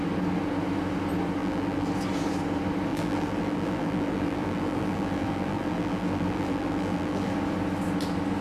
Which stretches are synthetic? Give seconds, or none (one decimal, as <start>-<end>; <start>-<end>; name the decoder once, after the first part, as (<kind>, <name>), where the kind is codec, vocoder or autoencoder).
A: 1.4-1.9 (vocoder, BigVGAN v2); 2.9-7.3